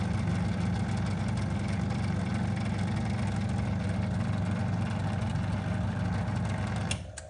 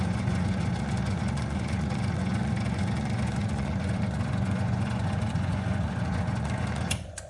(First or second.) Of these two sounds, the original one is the first